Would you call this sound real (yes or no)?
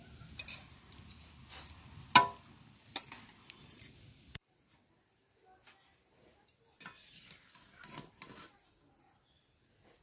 yes